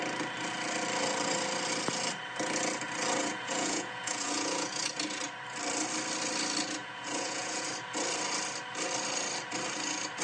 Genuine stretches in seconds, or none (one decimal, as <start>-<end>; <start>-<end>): 0.0-3.2; 4.8-6.8; 7.6-10.2